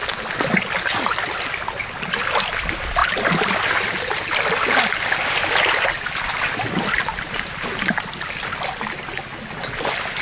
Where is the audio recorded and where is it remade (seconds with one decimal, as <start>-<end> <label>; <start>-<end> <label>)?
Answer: 0.0-10.2 recorded